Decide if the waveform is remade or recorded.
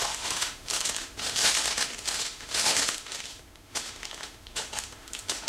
remade